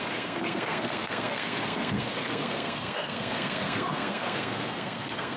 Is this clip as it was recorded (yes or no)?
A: no